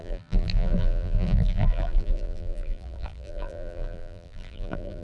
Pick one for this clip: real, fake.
fake